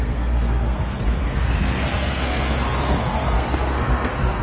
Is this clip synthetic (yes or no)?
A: yes